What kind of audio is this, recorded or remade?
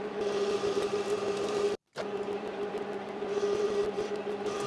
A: remade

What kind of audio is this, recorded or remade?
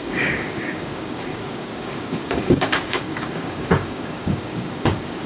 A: remade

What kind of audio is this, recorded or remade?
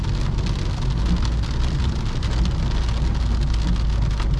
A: recorded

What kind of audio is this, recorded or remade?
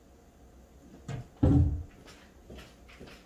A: recorded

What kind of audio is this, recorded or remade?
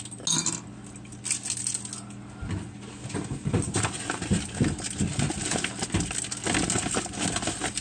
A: recorded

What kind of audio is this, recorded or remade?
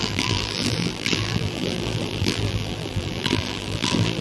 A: remade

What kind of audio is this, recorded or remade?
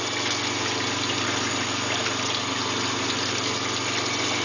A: recorded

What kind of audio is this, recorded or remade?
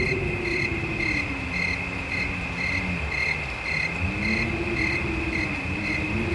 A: recorded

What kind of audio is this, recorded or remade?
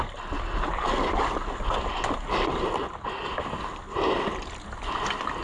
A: recorded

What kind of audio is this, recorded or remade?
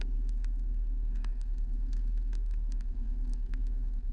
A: remade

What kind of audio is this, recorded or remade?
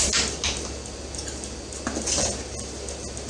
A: recorded